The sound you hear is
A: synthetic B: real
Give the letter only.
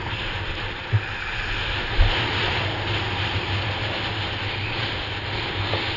B